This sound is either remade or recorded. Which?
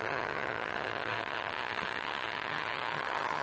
remade